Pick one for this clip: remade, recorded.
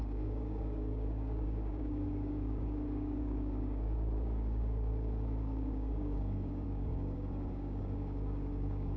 remade